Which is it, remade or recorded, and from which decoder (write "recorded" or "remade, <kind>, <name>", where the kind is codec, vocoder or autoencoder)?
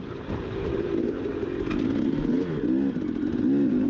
recorded